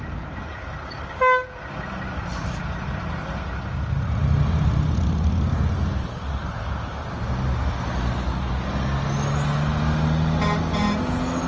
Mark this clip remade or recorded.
recorded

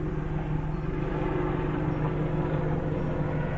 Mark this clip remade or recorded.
recorded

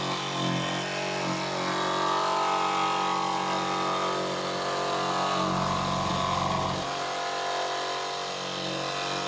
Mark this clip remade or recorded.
recorded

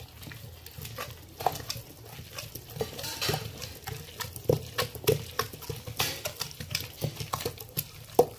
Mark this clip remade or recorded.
recorded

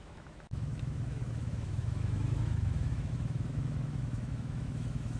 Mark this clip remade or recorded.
remade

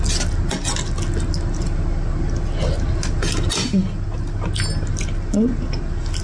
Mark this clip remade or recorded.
recorded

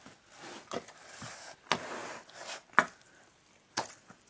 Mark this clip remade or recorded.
recorded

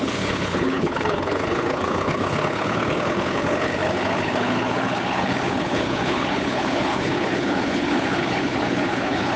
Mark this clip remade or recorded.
remade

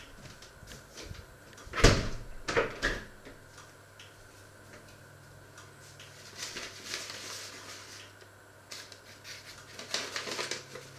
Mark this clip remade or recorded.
recorded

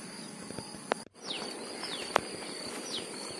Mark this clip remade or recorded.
recorded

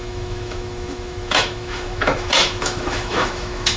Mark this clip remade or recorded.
remade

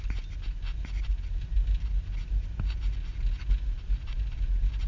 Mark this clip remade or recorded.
recorded